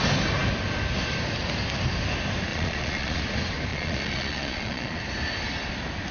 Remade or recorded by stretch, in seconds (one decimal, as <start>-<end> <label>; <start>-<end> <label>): 0.0-2.5 recorded; 2.5-3.2 remade; 3.2-3.7 recorded; 3.7-5.0 remade; 5.0-6.1 recorded

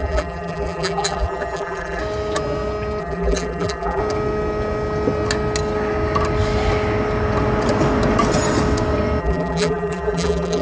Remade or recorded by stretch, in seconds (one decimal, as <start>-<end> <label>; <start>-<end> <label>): 0.0-2.0 remade; 2.0-3.0 recorded; 3.0-4.0 remade; 4.0-9.2 recorded; 9.2-10.6 remade

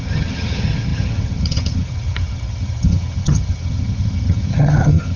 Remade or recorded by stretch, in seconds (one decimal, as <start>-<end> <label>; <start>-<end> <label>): 0.0-5.2 remade

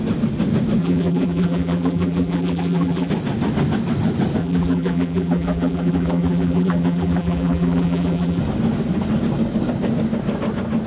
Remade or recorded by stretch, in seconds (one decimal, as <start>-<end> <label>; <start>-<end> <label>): 0.0-0.8 recorded; 0.8-3.1 remade; 3.1-4.4 recorded; 4.4-8.4 remade; 8.4-10.9 recorded

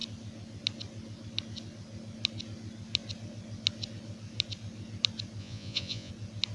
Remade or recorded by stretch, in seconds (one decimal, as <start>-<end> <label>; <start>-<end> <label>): 0.0-5.4 recorded; 5.4-6.1 remade; 6.1-6.5 recorded

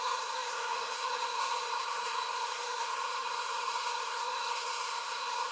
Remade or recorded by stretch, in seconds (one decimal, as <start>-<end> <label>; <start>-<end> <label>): 0.0-5.5 remade